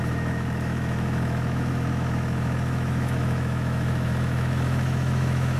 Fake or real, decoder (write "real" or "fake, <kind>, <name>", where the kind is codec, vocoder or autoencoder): fake, autoencoder, DAC-VAE